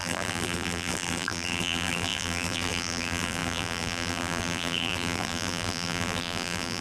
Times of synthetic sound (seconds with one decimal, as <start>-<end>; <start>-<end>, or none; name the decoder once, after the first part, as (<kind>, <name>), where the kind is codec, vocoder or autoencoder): 0.0-6.8 (vocoder, BigVGAN v2)